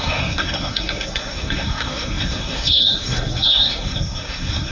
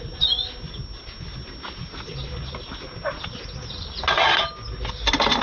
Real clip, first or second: second